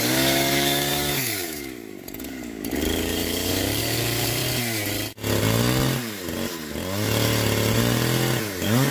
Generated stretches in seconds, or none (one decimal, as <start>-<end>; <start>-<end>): 0.0-4.4; 8.4-8.9